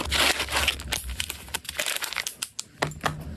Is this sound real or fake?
real